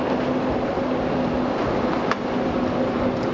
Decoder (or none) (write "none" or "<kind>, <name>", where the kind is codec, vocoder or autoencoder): none